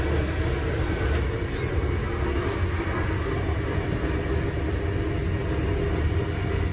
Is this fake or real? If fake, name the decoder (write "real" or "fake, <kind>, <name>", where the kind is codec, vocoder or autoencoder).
real